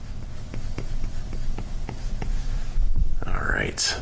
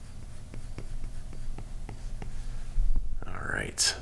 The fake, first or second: first